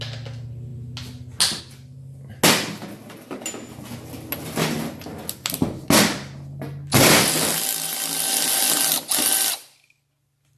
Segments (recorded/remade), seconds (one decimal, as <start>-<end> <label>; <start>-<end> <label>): 0.0-10.6 recorded